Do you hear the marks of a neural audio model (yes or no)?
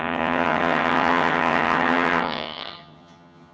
yes